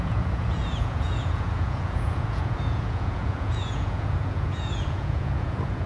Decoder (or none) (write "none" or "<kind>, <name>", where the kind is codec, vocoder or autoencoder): vocoder, Vocos